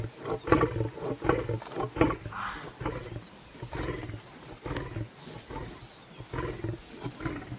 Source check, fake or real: real